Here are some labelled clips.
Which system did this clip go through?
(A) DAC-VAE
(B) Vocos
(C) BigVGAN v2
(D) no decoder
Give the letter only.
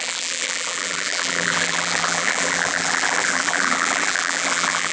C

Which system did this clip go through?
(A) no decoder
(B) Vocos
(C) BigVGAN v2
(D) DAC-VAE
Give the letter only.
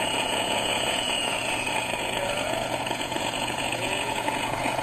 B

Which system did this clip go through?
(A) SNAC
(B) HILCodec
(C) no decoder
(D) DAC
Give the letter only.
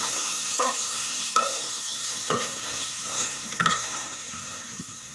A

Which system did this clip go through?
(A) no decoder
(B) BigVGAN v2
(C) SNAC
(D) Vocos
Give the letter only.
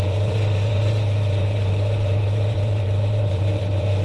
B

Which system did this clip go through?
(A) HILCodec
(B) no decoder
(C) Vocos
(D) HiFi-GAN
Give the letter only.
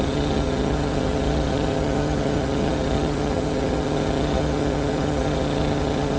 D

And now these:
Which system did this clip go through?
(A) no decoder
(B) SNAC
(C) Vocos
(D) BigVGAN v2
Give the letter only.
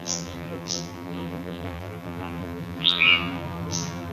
D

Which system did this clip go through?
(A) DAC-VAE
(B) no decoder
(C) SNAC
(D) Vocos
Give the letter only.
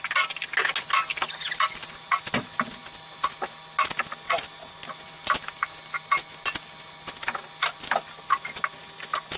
B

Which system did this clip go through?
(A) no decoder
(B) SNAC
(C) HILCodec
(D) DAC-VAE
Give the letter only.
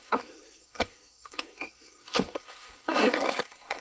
B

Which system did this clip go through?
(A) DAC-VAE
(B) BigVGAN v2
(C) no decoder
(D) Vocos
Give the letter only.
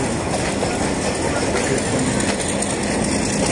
C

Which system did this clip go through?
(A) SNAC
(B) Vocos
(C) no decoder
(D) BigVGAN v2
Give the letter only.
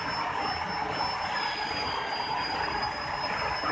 C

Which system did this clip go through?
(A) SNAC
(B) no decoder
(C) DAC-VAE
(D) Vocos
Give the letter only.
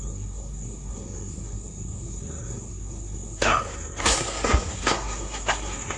A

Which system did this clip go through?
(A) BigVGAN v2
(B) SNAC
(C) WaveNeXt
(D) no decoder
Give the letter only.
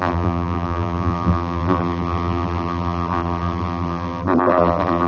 A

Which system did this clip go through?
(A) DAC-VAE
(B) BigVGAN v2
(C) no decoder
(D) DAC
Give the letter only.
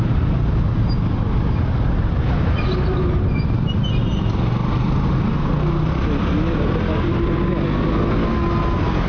C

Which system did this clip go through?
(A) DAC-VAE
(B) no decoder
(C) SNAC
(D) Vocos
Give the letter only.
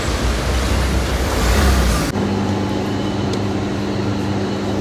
B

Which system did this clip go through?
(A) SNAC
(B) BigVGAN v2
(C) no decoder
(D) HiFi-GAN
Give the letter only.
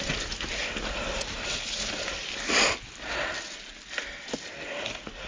C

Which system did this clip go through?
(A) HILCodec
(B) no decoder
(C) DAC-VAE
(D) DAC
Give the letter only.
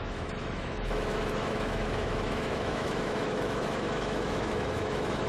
C